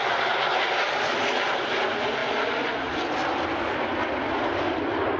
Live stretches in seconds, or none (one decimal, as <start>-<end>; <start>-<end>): 0.0-5.2